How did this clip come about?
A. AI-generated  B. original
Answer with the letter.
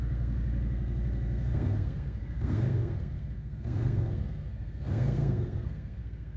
A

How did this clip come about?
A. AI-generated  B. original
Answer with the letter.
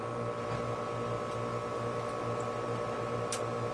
B